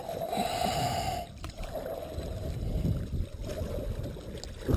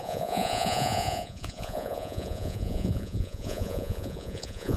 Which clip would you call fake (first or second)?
second